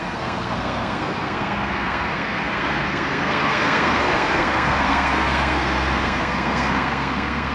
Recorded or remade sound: remade